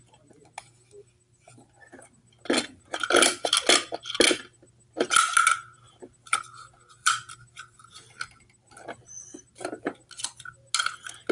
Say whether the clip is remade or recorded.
recorded